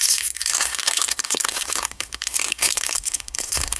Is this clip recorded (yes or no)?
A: no